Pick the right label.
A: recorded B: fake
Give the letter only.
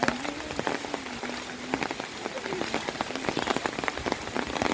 A